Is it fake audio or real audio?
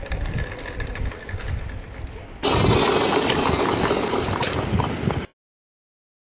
real